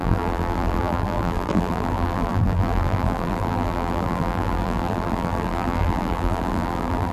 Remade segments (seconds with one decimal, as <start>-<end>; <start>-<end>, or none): 0.0-7.1

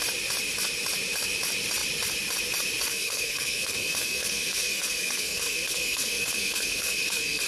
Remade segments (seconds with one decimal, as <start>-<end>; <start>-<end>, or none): 2.9-7.5

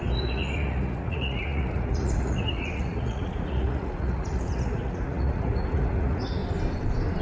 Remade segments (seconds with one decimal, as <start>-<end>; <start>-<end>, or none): 0.0-6.4

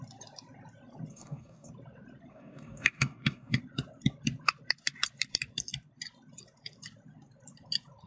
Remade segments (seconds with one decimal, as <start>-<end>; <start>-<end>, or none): 1.1-1.7; 2.3-3.6